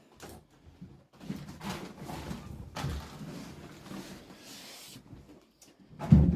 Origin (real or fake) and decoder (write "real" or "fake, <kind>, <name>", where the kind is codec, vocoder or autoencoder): real